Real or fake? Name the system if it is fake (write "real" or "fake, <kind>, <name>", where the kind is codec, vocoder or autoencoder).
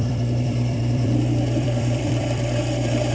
fake, vocoder, BigVGAN v2